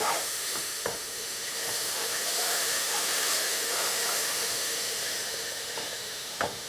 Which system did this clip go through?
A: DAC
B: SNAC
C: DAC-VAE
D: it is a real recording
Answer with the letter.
C